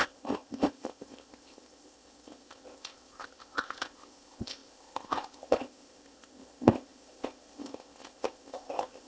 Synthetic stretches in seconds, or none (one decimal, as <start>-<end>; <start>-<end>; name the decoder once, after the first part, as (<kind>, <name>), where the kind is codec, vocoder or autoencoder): 0.0-9.1 (codec, ZipCodec)